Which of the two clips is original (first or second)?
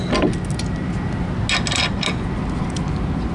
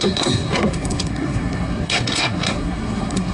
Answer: first